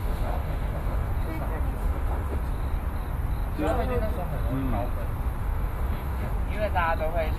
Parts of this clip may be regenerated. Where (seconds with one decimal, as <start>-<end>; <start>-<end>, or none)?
0.0-1.1; 1.8-2.4; 5.4-6.3